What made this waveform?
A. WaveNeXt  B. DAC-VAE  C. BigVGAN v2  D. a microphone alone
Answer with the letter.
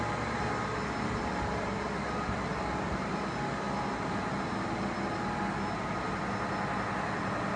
D